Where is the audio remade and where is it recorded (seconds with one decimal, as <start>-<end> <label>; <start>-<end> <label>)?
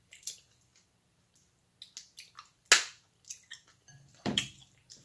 0.0-0.7 remade; 0.7-3.7 recorded; 3.7-5.0 remade